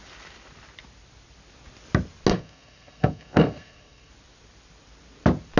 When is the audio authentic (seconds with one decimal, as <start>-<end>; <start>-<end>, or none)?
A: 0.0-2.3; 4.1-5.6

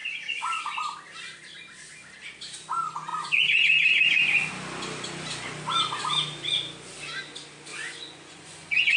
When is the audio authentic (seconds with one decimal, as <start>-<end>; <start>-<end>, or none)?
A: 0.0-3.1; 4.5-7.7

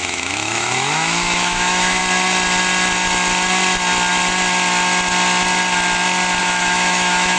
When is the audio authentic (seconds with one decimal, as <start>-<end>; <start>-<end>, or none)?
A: 2.0-6.4

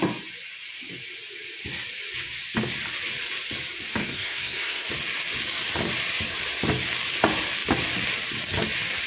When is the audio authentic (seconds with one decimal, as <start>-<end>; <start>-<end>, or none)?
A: 0.0-4.0; 4.9-9.1

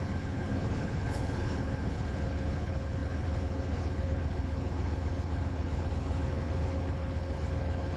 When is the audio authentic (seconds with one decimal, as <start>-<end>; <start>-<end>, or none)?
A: none

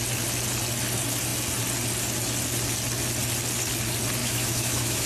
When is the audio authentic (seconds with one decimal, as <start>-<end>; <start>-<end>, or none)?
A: 0.0-4.2

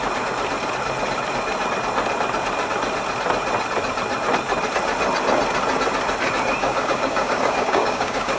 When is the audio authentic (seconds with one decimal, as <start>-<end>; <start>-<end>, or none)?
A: 0.0-6.6